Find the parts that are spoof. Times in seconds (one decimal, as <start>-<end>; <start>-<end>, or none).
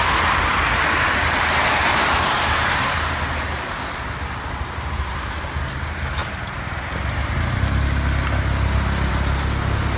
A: 1.6-3.8